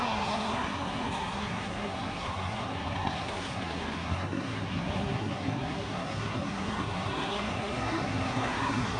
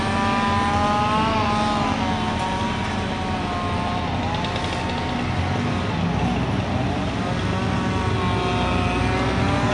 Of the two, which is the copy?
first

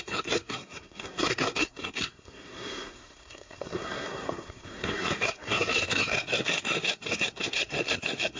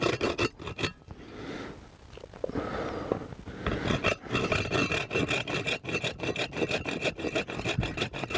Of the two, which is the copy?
first